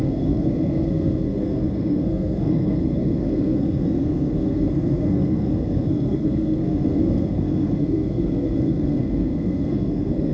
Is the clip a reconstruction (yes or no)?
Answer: yes